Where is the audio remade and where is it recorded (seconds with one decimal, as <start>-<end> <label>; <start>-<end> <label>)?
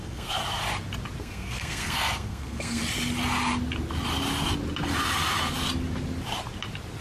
0.0-0.4 remade; 0.4-1.2 recorded; 1.2-2.8 remade; 2.8-7.0 recorded